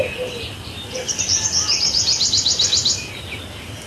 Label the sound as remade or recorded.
recorded